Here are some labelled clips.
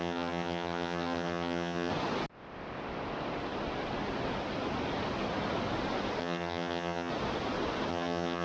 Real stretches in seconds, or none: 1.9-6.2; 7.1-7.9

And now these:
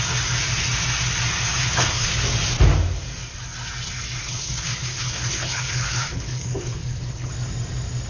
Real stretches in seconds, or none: 0.0-1.6; 2.2-4.2; 7.3-8.1

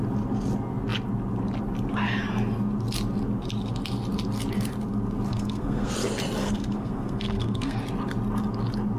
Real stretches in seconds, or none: 0.0-5.3; 5.9-6.4; 7.8-9.0

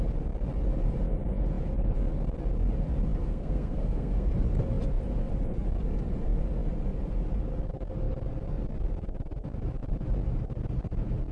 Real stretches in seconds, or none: 0.0-3.2; 4.3-11.3